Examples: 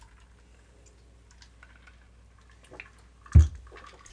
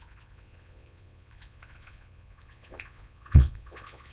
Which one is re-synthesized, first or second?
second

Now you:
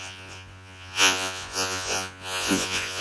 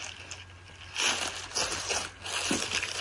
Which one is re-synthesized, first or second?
first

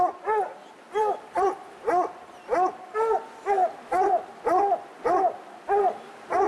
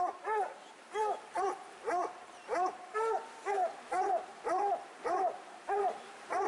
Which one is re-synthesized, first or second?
second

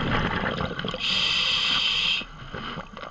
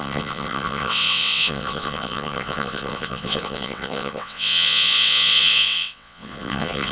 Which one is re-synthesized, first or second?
second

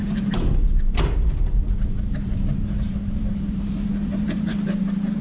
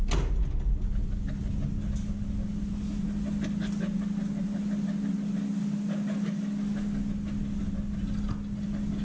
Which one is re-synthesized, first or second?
first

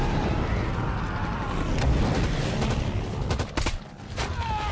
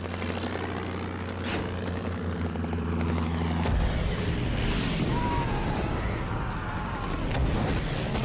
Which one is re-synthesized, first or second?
first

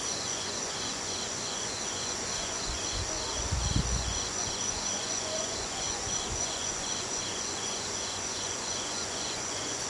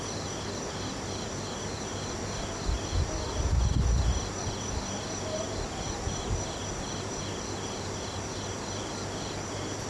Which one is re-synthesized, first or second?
first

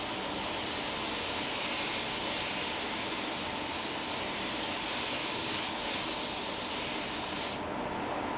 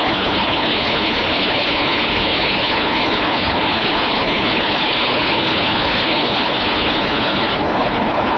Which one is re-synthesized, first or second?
second